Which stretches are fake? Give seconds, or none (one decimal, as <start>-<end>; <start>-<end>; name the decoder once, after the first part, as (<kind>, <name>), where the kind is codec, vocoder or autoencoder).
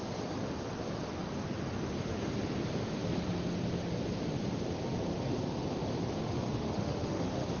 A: 6.2-7.6 (autoencoder, DAC-VAE)